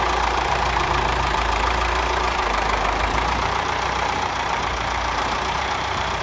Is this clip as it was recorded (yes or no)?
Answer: no